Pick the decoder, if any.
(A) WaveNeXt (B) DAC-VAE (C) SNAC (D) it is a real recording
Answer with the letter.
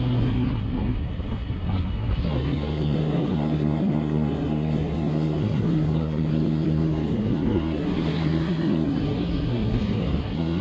C